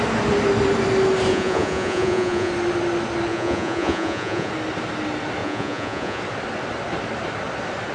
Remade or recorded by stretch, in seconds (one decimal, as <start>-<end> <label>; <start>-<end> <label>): 0.0-1.3 recorded; 1.3-2.5 remade; 2.5-3.3 recorded; 3.3-4.5 remade; 4.5-5.4 recorded; 5.4-6.2 remade; 6.2-7.9 recorded